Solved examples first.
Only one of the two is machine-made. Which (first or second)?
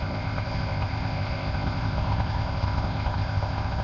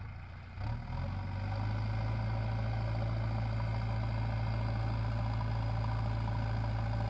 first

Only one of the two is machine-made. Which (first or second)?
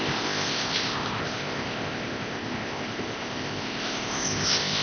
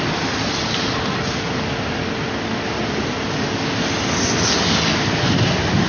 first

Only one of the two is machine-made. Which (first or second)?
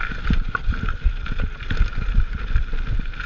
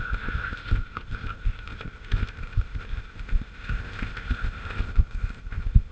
second